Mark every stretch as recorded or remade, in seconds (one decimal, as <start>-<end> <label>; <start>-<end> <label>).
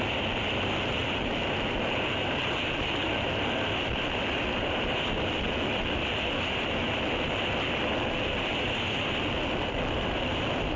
0.0-1.0 remade; 1.0-1.9 recorded; 1.9-10.8 remade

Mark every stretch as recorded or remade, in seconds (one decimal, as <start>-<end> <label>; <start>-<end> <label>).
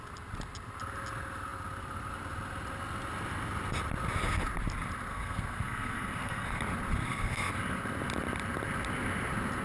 0.0-5.1 recorded; 5.1-6.6 remade; 6.6-7.0 recorded; 7.0-7.5 remade; 7.5-9.6 recorded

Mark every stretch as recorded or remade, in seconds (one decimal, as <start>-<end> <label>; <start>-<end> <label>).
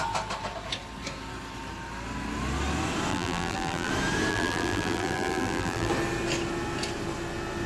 0.0-3.1 recorded; 3.1-3.9 remade; 3.9-4.3 recorded; 4.3-5.9 remade; 5.9-7.7 recorded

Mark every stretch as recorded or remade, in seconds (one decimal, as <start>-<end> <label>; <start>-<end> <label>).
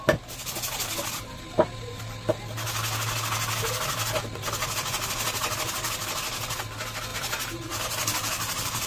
0.0-7.1 recorded; 7.1-8.9 remade